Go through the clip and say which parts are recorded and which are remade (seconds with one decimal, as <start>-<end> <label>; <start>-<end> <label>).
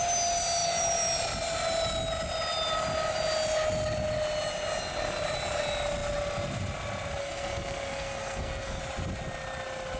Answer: 0.0-7.2 recorded; 7.2-8.8 remade; 8.8-10.0 recorded